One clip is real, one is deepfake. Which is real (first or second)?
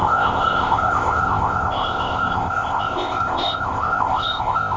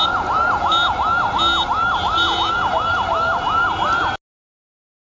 second